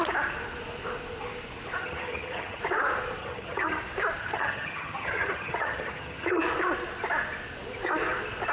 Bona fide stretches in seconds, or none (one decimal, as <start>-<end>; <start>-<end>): 0.0-1.8; 2.6-3.2; 3.8-4.2; 6.4-8.5